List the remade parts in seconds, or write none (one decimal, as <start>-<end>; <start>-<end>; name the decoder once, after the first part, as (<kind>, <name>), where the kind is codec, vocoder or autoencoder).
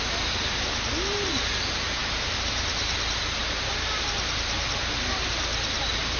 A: none